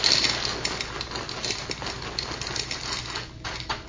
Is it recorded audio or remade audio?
recorded